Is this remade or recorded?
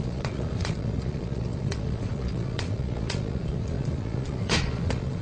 remade